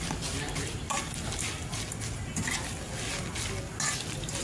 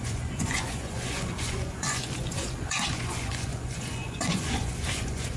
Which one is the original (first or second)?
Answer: first